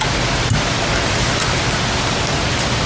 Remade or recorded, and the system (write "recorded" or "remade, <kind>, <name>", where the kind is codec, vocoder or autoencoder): recorded